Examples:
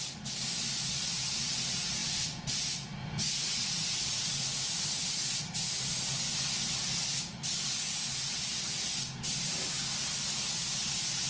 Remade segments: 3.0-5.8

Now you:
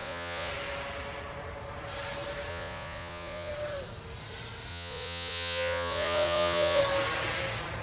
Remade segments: 0.0-0.5; 2.5-3.5; 4.7-6.8

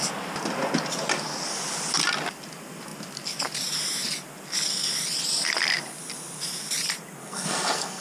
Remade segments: 7.2-8.0

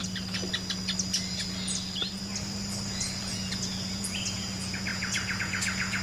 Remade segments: 2.9-6.0